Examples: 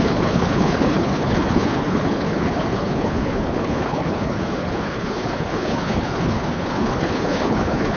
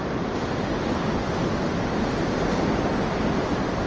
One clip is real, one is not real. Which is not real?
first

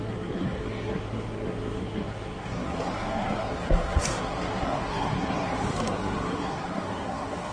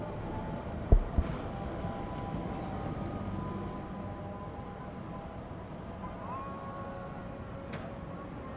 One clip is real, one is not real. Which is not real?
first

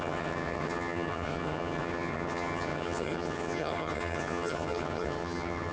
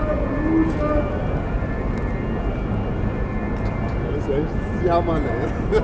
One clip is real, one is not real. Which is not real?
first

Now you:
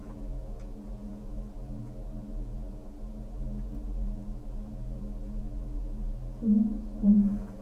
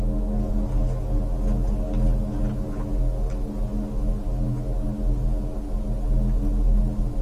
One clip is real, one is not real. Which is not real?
first